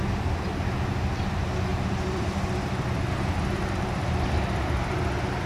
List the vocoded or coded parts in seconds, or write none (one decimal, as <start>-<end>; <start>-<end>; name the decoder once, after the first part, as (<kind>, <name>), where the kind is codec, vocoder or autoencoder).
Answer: 1.7-5.0 (vocoder, BigVGAN v2)